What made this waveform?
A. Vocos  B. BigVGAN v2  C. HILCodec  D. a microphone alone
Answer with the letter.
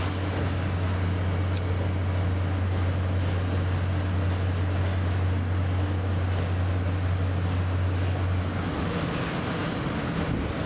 D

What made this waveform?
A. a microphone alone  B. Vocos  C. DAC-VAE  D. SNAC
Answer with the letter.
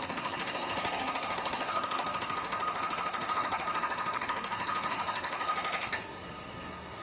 D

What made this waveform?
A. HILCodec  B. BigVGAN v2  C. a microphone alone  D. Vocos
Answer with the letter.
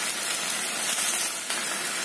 C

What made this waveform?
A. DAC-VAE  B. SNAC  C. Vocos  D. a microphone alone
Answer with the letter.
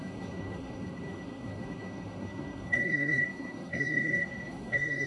B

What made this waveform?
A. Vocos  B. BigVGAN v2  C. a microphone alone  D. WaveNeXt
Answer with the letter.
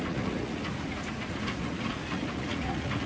A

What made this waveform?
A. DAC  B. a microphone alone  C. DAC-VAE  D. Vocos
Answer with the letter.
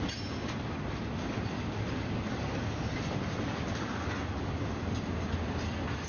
B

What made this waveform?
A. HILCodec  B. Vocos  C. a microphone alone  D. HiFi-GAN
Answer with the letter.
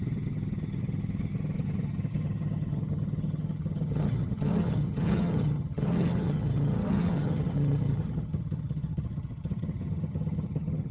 D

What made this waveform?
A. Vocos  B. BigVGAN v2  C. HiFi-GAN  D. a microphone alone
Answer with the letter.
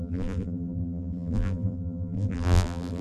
B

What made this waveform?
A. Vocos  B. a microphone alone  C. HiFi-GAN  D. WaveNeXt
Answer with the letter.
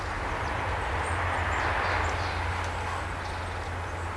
B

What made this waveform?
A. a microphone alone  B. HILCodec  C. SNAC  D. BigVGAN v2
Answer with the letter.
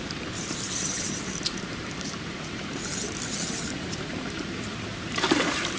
D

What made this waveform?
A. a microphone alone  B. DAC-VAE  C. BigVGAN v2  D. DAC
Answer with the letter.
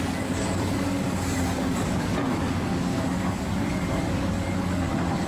D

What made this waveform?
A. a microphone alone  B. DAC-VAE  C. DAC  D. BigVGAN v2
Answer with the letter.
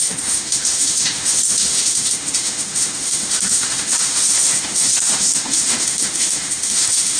B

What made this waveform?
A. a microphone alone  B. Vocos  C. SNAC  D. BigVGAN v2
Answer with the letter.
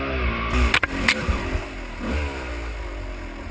A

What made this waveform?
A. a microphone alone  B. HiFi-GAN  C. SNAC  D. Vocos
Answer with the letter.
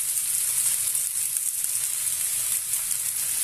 A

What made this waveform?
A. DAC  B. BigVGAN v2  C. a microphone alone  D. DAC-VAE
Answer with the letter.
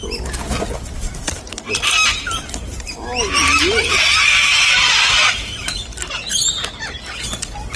C